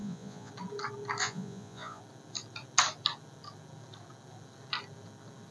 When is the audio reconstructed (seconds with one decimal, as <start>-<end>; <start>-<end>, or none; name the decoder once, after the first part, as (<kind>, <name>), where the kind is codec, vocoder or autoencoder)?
0.0-0.5 (vocoder, Vocos); 1.2-2.0